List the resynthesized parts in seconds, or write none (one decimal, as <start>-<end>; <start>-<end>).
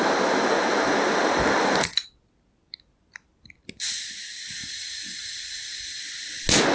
4.6-6.0